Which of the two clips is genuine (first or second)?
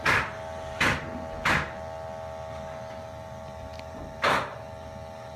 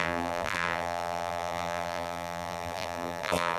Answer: first